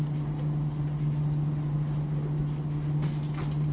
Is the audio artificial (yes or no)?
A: no